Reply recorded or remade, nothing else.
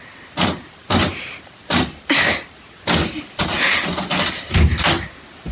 remade